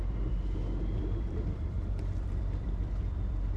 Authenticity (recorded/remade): remade